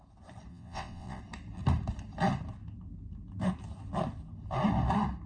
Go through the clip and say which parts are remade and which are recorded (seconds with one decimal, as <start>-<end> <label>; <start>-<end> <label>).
0.0-0.5 recorded; 0.5-1.2 remade; 1.2-5.3 recorded